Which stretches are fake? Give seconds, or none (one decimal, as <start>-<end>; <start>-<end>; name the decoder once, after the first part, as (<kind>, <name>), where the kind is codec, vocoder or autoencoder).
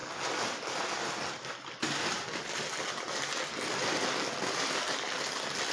none